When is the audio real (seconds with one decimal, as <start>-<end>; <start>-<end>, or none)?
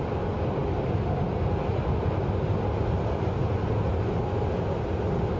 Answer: 0.0-5.4